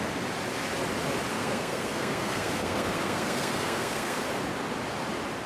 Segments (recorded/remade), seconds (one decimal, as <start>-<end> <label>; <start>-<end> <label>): 0.0-1.3 recorded; 1.3-4.2 remade; 4.2-5.5 recorded